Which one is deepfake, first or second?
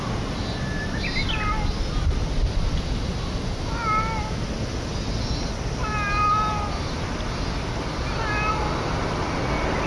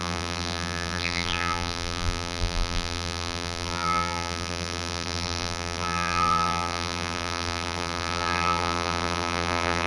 second